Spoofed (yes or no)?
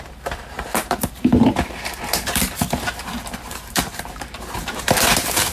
yes